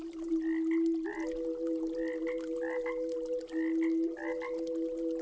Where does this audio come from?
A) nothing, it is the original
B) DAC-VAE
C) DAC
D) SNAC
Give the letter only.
A